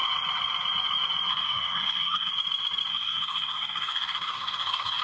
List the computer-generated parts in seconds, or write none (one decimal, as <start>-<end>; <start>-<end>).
1.3-2.3; 2.9-5.0